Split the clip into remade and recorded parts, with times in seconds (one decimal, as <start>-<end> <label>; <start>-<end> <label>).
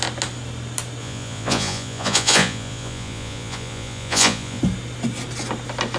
0.0-1.0 recorded; 1.0-4.6 remade; 4.6-6.0 recorded